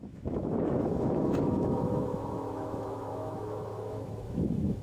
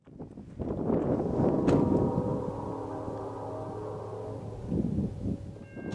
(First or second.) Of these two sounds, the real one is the second